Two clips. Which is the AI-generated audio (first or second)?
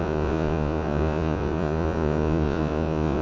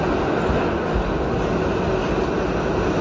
first